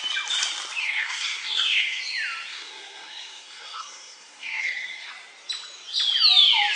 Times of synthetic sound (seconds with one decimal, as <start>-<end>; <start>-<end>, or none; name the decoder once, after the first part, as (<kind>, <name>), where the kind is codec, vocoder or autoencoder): 0.8-2.0 (codec, SNAC); 2.5-5.1